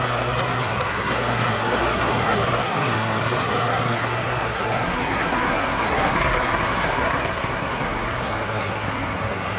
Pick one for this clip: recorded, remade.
remade